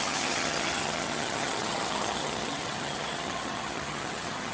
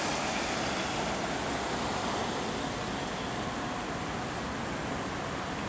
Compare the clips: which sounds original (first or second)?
second